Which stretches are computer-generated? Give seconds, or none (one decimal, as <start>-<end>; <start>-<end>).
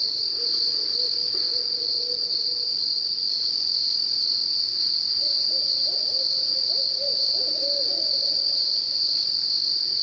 none